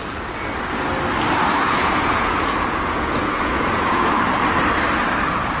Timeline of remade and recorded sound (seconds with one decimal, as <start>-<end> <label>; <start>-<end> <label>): 0.0-1.5 recorded; 1.5-4.1 remade; 4.1-5.6 recorded